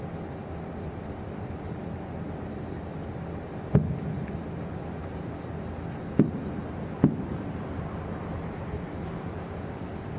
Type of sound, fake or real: real